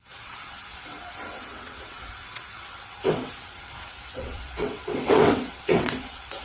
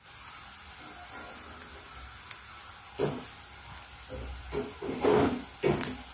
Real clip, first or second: second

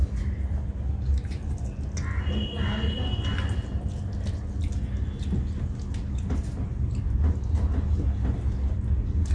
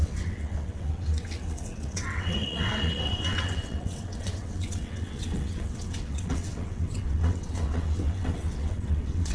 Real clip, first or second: first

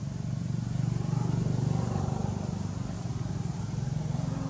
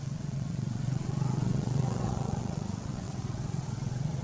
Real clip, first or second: first